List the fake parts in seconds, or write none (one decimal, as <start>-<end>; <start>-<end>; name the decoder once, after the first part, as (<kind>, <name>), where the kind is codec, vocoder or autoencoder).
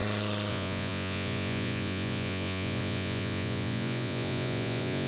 0.5-5.1 (vocoder, Vocos)